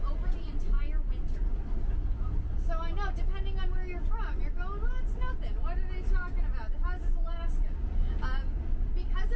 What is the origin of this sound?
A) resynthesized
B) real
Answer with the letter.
B